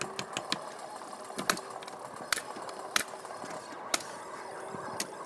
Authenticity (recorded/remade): recorded